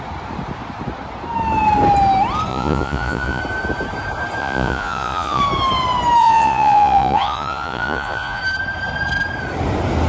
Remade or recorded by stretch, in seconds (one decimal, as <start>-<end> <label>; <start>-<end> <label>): 0.0-2.5 recorded; 2.5-3.4 remade; 3.4-4.4 recorded; 4.4-5.4 remade; 5.4-6.2 recorded; 6.2-8.4 remade; 8.4-10.1 recorded